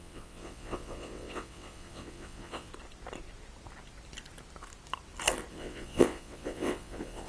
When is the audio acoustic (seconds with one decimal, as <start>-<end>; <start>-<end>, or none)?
2.7-5.5